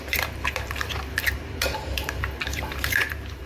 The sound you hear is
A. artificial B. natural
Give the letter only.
A